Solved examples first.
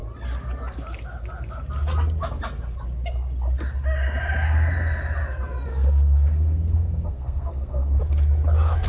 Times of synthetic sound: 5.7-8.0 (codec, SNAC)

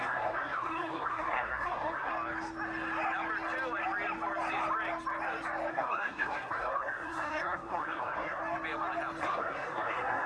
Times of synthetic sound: 0.0-2.1 (codec, SNAC); 5.7-8.4; 9.2-10.3

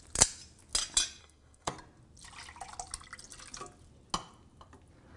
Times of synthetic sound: 1.2-1.7 (codec, SNAC)

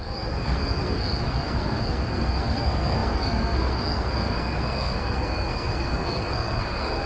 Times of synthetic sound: 0.0-7.1 (codec, SNAC)